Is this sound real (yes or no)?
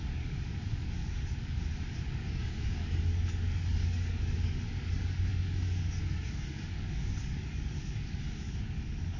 no